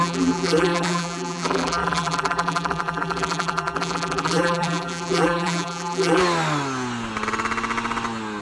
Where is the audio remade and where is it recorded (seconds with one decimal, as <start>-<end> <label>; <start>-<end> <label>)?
0.0-6.2 remade; 6.2-8.4 recorded